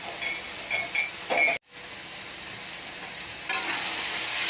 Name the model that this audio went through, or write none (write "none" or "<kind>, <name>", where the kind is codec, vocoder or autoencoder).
none